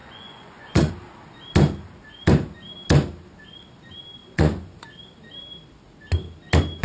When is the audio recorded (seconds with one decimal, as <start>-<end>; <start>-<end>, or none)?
0.9-4.2; 4.8-6.8